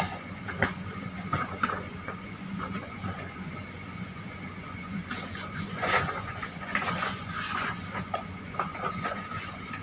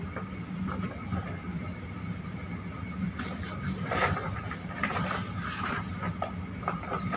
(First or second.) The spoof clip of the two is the first